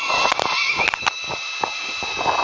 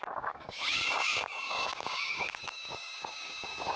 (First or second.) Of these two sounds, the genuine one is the first